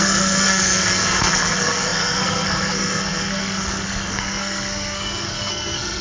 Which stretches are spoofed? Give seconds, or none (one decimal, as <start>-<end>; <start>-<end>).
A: 0.0-6.0